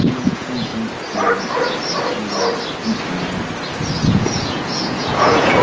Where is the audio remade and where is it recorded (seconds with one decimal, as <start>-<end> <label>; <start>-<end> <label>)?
0.0-0.7 remade; 0.7-4.1 recorded; 4.1-5.6 remade